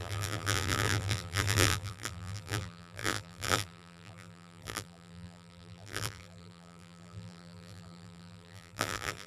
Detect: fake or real fake